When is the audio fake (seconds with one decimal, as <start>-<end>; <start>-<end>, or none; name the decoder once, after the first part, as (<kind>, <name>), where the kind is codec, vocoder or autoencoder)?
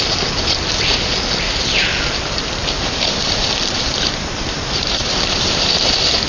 1.9-5.7 (vocoder, BigVGAN v2)